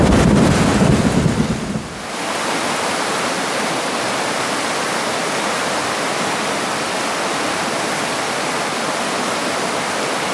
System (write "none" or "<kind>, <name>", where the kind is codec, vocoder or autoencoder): none